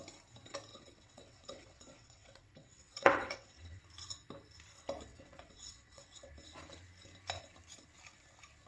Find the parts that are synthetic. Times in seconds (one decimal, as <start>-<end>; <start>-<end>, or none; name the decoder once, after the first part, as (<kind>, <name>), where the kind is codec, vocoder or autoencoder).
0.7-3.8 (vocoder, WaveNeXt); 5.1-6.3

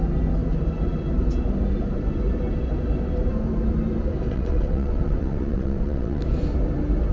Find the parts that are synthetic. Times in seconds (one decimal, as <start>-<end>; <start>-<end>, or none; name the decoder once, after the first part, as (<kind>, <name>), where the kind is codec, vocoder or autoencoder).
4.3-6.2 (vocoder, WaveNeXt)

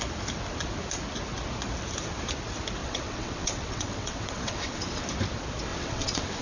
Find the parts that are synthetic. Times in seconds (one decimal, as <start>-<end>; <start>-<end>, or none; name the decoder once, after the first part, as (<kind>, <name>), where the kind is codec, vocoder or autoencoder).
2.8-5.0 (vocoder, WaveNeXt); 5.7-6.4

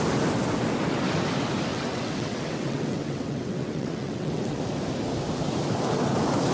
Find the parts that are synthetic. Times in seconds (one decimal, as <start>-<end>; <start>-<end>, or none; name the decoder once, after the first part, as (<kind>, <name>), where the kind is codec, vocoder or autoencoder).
1.7-4.6 (vocoder, WaveNeXt)

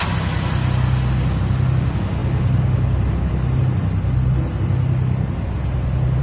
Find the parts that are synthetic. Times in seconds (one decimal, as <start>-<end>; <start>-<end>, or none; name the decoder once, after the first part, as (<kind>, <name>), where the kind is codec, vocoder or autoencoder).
none